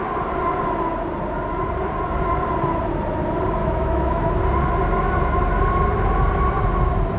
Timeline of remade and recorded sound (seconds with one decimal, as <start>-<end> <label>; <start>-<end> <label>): 0.0-3.6 recorded; 3.6-4.4 remade; 4.4-7.2 recorded